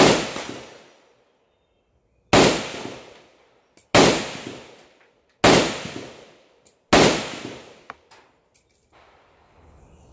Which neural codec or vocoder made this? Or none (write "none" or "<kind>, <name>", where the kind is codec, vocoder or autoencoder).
none